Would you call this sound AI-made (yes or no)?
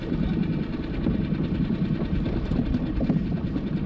no